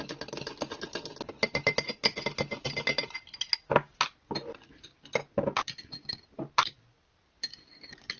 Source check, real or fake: real